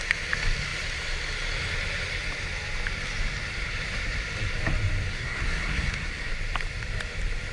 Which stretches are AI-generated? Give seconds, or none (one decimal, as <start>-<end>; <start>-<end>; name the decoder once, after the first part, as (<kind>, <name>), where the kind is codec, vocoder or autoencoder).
5.1-6.3 (codec, SNAC)

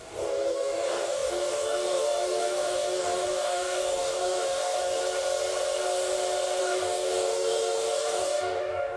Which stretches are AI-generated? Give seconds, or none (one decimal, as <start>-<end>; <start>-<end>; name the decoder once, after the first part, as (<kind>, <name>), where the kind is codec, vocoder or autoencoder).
0.0-5.0 (codec, DAC); 6.6-9.0

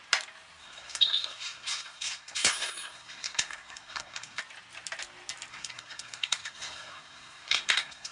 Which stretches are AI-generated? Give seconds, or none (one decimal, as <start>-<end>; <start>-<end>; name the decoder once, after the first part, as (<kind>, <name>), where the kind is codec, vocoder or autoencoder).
0.6-4.4 (codec, SNAC); 5.5-8.1